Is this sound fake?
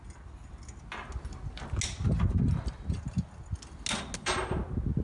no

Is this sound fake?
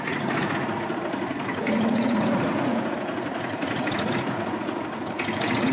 yes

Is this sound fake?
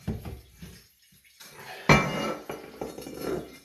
no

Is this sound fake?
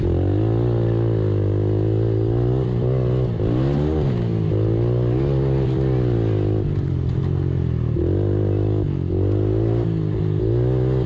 no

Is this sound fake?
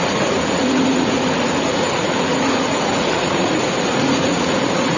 yes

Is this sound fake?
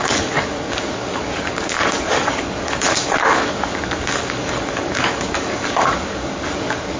yes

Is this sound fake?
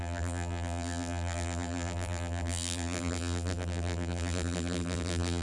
yes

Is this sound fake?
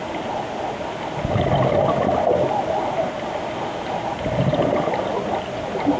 no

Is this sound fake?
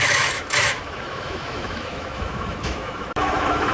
yes